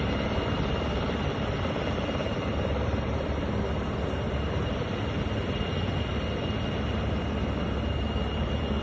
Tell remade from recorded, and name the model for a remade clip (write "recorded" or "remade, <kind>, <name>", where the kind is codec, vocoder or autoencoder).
remade, vocoder, BigVGAN v2